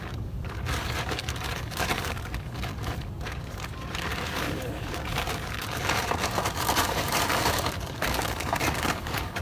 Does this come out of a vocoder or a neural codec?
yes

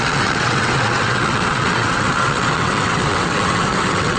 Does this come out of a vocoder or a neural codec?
yes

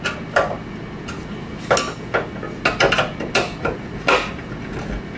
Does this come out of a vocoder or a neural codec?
no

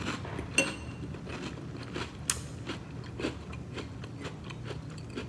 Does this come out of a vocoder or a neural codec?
no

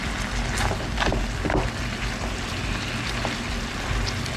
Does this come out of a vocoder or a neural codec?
no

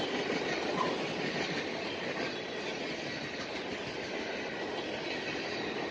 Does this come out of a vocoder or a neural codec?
no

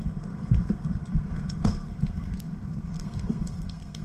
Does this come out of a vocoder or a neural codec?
yes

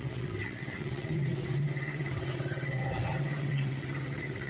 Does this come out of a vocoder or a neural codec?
yes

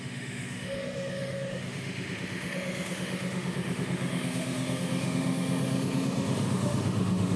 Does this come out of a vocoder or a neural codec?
yes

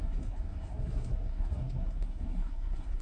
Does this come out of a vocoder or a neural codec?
yes